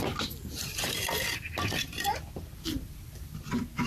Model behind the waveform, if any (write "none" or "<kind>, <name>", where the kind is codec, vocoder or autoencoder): vocoder, BigVGAN v2